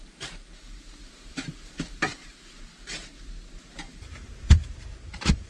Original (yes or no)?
no